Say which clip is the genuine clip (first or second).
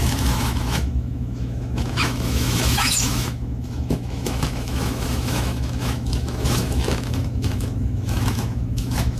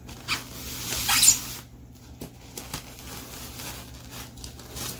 second